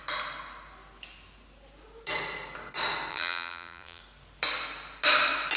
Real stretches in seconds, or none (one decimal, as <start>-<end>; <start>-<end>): 0.0-3.1; 4.0-5.6